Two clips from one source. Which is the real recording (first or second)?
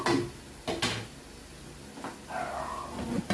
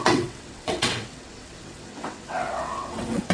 first